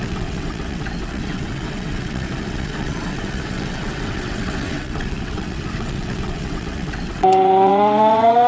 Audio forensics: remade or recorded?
remade